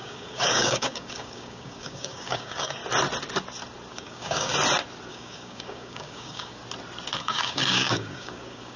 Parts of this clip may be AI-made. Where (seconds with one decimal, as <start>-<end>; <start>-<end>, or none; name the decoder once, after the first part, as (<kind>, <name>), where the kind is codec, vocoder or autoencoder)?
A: 0.0-2.8 (codec, DAC); 3.9-4.5; 5.1-6.6; 7.2-8.8